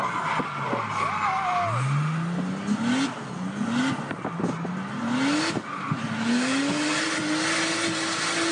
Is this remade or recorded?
recorded